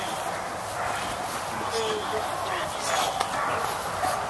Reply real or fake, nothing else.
real